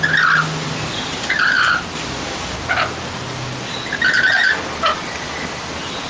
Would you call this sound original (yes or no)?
yes